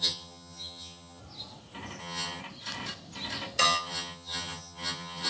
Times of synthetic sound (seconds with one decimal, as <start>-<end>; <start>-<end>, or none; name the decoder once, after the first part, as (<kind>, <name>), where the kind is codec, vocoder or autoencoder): 0.0-1.2 (vocoder, HiFi-GAN); 2.0-2.4; 3.6-5.3